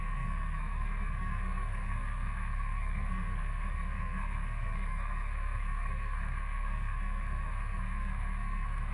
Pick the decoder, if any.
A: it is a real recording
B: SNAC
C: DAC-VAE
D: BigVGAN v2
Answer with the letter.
B